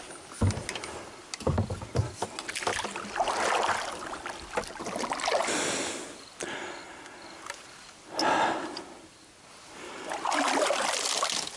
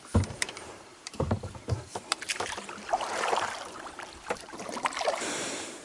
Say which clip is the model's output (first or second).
second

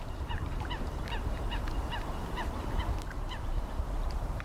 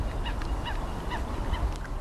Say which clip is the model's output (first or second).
first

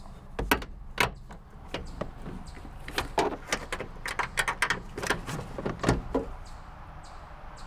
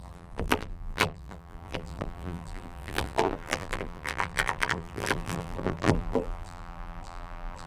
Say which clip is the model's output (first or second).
second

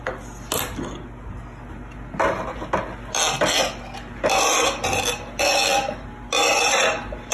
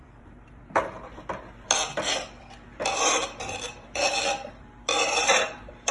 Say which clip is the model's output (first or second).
second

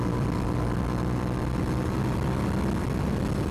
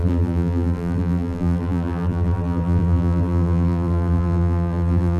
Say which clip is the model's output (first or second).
second